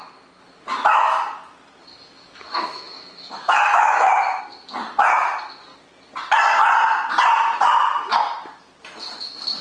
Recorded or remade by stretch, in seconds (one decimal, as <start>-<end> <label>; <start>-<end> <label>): 0.0-1.9 recorded; 1.9-4.4 remade; 4.4-9.6 recorded